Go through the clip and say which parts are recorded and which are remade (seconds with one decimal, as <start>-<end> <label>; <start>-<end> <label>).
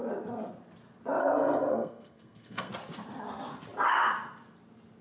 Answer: 0.0-1.2 recorded; 1.2-2.7 remade; 2.7-5.0 recorded